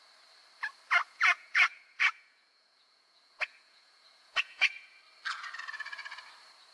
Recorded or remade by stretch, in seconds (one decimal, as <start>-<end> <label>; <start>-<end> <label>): 0.0-1.0 recorded; 1.0-5.0 remade; 5.0-6.7 recorded